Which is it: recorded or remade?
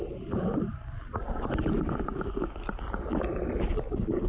remade